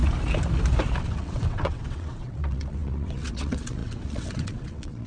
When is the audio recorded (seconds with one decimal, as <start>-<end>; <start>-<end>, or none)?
0.0-1.0